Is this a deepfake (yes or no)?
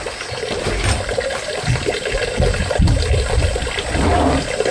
no